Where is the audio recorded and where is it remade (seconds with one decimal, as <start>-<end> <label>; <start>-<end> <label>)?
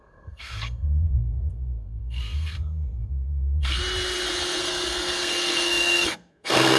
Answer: 0.0-3.8 remade; 3.8-4.6 recorded; 4.6-6.8 remade